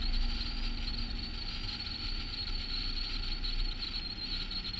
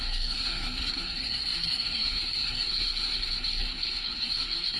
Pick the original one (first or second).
first